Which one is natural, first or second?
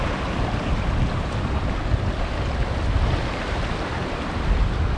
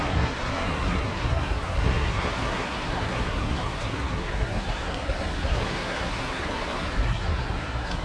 first